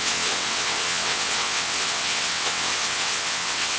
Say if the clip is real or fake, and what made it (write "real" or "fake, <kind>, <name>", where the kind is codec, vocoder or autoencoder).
fake, vocoder, WaveNeXt